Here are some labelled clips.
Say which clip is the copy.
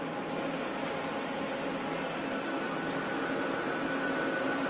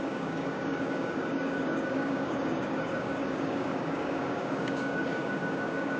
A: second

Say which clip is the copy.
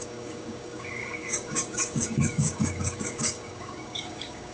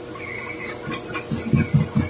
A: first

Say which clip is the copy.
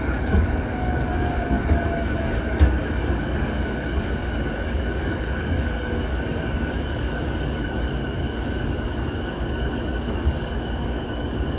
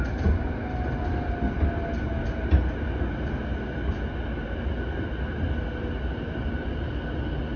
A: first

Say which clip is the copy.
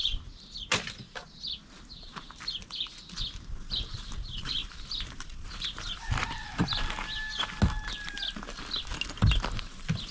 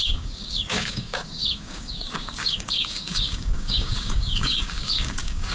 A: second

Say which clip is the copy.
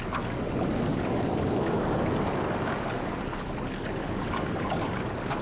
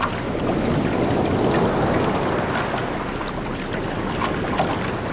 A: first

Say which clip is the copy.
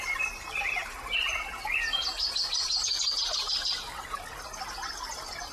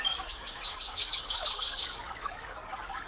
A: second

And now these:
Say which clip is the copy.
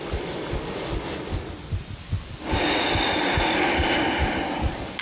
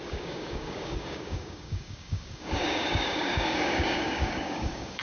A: second